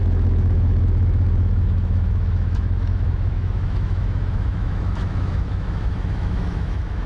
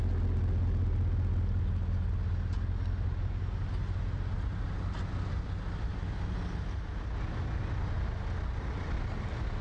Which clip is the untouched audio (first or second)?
second